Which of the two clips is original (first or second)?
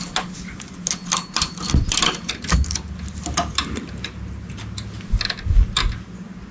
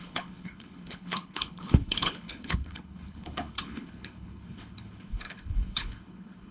first